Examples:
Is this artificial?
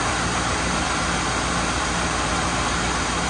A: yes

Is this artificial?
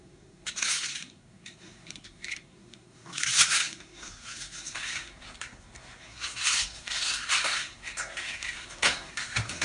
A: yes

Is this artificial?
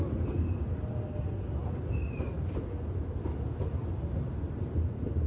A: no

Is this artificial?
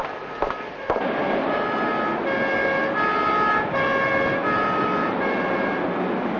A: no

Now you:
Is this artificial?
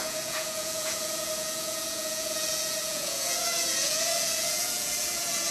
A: yes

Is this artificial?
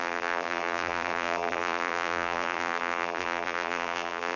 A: yes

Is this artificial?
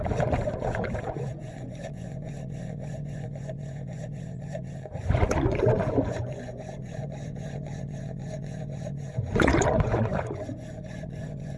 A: yes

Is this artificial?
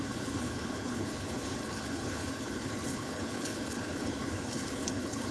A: yes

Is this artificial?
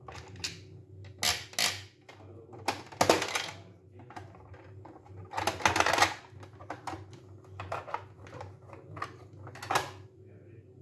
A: no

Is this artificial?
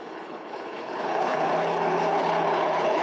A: yes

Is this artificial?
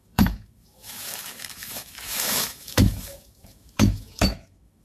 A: yes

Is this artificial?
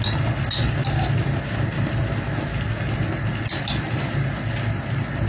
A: no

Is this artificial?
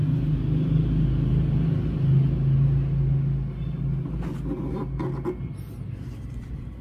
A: no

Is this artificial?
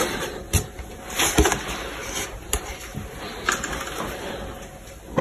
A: no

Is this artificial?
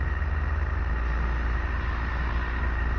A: no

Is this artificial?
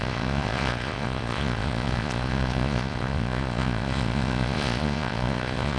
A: yes